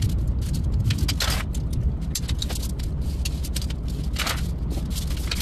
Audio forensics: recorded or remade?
recorded